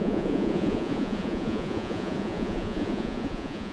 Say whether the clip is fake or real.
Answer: fake